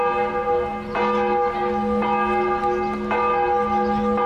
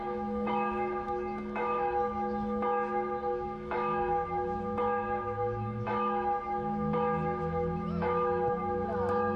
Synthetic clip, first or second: second